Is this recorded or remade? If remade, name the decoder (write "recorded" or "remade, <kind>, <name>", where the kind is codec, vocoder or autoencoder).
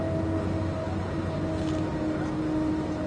recorded